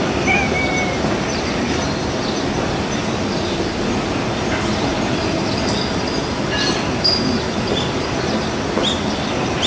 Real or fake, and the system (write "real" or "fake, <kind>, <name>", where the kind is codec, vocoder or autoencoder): real